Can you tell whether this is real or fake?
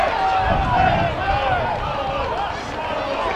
real